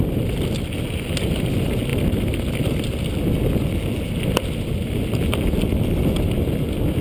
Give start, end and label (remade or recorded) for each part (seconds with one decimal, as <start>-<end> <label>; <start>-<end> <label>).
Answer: 0.0-7.0 recorded